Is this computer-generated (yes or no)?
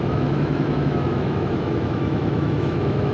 yes